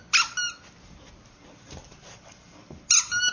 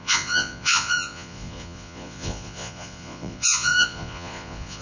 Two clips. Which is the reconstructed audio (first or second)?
second